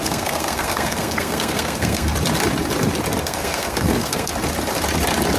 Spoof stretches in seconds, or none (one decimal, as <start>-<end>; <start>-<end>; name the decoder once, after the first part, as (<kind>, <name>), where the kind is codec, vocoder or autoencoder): 0.0-2.1 (codec, SNAC); 3.2-4.3